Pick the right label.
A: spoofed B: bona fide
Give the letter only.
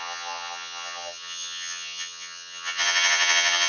A